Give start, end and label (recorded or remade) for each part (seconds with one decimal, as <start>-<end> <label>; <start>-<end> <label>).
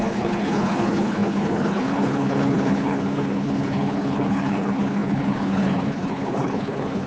0.0-7.1 remade